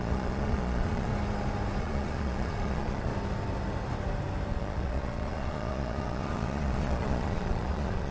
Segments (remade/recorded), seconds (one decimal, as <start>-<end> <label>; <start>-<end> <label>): 0.0-1.1 remade; 1.1-1.8 recorded; 1.8-3.1 remade; 3.1-4.5 recorded; 4.5-8.1 remade